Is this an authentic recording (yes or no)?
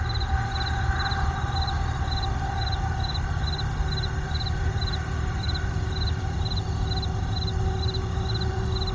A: yes